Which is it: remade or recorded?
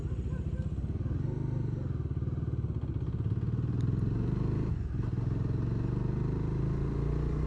recorded